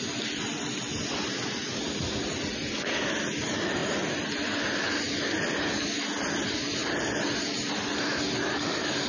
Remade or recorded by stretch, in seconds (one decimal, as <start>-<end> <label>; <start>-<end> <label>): 0.0-9.1 recorded